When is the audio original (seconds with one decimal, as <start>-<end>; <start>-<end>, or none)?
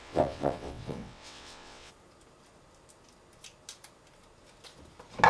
1.9-5.3